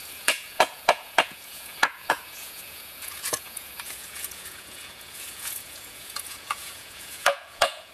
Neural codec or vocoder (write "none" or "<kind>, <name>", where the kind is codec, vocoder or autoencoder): vocoder, Vocos